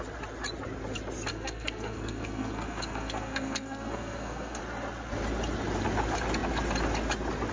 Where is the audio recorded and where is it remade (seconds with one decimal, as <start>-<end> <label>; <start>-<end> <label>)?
0.0-1.3 recorded; 1.3-4.6 remade; 4.6-7.5 recorded